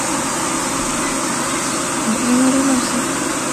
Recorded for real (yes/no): yes